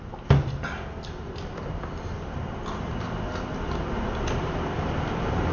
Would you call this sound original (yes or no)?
yes